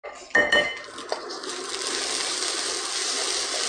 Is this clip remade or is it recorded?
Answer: recorded